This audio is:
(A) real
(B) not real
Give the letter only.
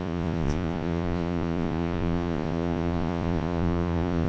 B